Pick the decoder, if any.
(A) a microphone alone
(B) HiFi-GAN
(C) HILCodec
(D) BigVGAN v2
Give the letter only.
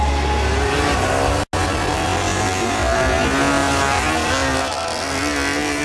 A